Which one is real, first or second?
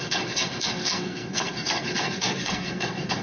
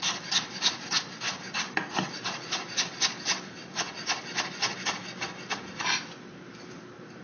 second